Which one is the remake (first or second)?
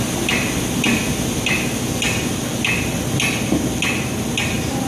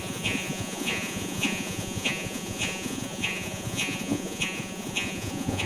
second